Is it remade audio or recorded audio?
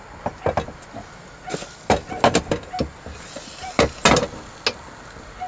recorded